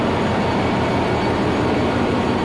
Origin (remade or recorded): recorded